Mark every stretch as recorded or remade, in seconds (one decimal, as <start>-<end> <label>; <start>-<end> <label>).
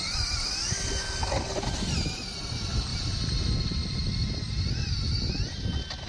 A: 0.0-6.1 recorded